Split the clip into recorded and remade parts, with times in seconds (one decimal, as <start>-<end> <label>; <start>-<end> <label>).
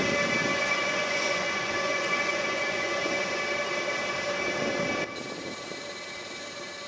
0.0-0.5 recorded; 0.5-3.4 remade; 3.4-6.9 recorded